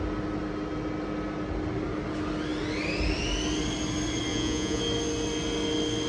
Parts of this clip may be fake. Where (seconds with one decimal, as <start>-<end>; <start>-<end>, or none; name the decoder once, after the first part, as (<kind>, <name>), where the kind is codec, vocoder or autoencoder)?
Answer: 4.3-4.8 (vocoder, Vocos)